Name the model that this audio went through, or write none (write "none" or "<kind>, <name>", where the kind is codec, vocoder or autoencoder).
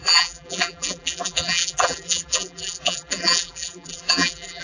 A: vocoder, BigVGAN v2